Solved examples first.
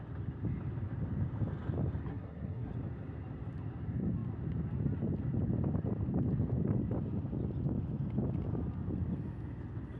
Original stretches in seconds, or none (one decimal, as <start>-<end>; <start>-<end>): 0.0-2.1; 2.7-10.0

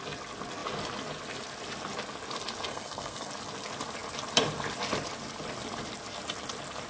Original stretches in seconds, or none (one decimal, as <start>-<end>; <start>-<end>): 0.0-2.7; 3.3-6.9

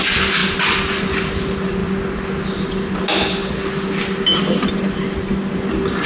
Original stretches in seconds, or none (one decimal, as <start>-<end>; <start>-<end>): 0.0-6.1